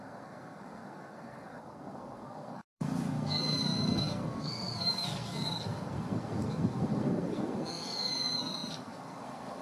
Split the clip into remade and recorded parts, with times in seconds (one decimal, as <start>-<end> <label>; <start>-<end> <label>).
0.0-9.6 remade